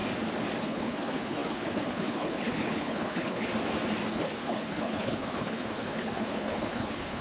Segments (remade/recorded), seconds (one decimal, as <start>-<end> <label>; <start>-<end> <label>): 0.0-0.6 recorded; 0.6-3.5 remade; 3.5-4.1 recorded; 4.1-7.2 remade